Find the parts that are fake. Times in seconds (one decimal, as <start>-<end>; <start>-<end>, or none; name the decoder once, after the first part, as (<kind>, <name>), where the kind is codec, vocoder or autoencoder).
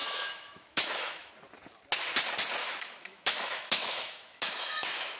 0.0-1.3 (autoencoder, DAC-VAE); 2.6-5.2